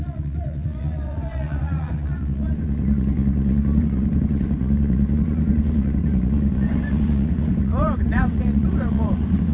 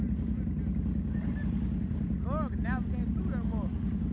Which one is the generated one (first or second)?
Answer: first